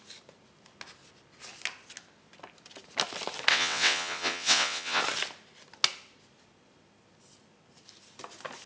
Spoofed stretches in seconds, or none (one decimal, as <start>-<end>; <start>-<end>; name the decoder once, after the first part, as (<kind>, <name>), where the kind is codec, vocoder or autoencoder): 3.5-5.0 (vocoder, WaveNeXt)